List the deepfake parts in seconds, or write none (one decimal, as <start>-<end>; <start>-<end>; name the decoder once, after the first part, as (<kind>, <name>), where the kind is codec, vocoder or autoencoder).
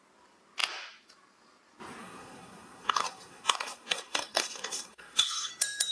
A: 2.0-5.5 (codec, SNAC)